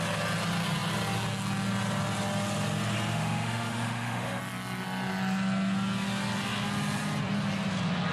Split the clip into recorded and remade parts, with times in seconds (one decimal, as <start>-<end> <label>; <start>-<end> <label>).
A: 0.0-3.1 recorded; 3.1-4.4 remade; 4.4-8.1 recorded